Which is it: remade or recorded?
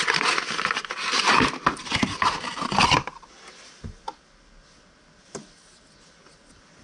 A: recorded